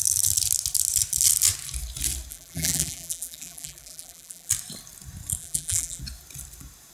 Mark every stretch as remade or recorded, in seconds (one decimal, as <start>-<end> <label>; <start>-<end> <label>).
0.0-2.3 recorded; 2.3-4.5 remade; 4.5-5.4 recorded; 5.4-6.0 remade; 6.0-6.9 recorded